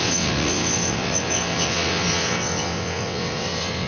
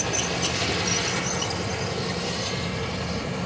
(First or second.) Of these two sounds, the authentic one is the second